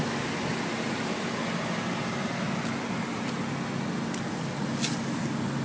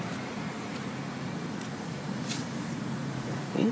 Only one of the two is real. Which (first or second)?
first